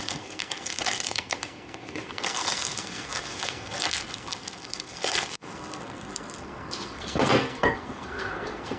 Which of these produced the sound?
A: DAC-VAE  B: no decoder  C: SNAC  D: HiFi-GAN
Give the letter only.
C